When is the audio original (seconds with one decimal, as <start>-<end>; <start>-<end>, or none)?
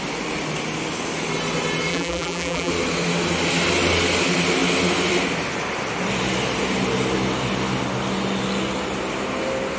0.0-1.9; 2.7-9.8